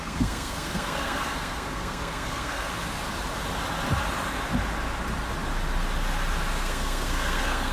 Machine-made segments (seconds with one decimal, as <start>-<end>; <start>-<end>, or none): 0.0-2.7; 6.6-7.7